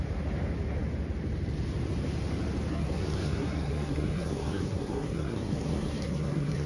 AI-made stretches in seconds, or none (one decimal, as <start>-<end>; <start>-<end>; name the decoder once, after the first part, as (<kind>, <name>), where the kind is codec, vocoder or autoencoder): 2.7-6.7 (codec, SNAC)